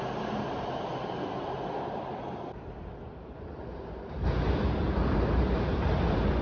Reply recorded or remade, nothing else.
recorded